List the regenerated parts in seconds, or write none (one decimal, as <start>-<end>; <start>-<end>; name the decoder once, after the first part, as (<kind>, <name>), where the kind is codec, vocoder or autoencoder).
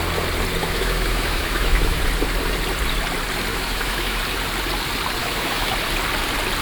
0.6-2.0 (autoencoder, DAC-VAE); 3.5-4.2; 5.2-5.7